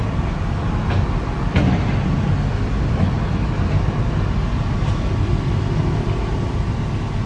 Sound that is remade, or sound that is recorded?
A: recorded